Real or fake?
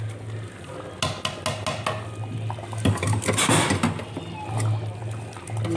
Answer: real